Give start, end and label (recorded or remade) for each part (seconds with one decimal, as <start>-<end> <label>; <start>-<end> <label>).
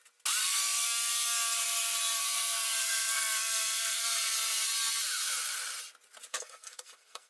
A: 0.0-0.4 recorded; 0.4-1.1 remade; 1.1-2.2 recorded; 2.2-4.0 remade; 4.0-6.3 recorded; 6.3-7.3 remade